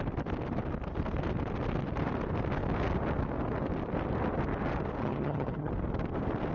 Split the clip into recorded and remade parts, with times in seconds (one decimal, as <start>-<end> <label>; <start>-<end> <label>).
0.0-5.0 recorded; 5.0-5.7 remade; 5.7-6.5 recorded